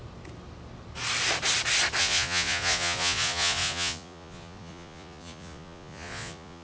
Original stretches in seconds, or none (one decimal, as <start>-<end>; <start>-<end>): 0.0-2.0